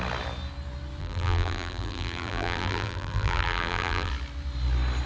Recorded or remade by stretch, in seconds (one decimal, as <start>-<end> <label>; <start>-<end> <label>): 0.0-1.0 recorded; 1.0-4.1 remade; 4.1-5.1 recorded